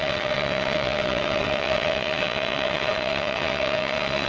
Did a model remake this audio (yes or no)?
yes